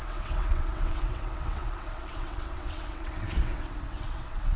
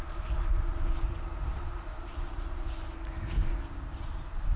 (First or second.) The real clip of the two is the second